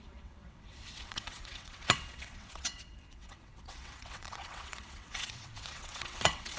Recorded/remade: remade